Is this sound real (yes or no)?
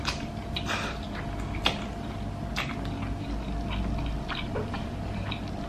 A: yes